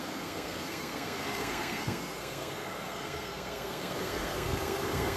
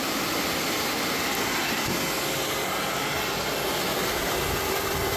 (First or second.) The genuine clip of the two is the second